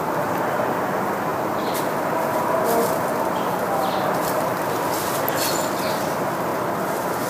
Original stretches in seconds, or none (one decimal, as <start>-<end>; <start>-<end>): 0.0-1.3; 5.2-7.3